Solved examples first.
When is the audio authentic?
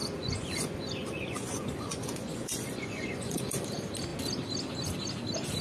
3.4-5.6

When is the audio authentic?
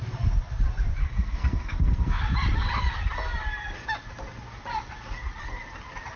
0.0-1.0; 2.2-6.2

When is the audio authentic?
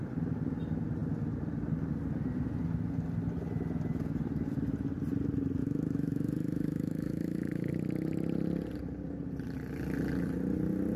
0.0-5.6; 7.7-11.0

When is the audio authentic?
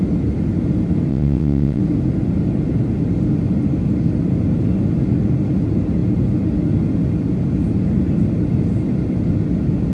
0.0-1.1; 1.8-9.9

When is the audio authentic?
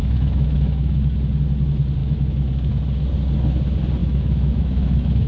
1.0-2.0; 2.7-4.0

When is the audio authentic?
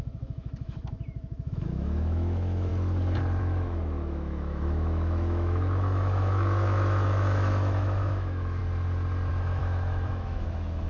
2.7-3.4; 8.6-9.3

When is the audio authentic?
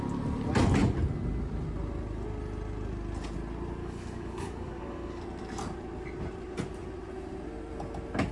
0.0-3.8; 5.2-8.3